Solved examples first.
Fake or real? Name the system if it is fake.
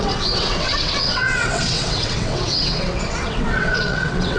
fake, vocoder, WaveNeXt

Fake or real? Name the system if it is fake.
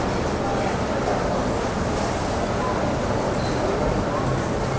real